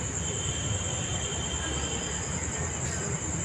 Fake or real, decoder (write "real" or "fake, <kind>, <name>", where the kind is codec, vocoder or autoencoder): real